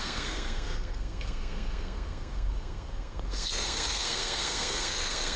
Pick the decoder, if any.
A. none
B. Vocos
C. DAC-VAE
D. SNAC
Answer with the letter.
D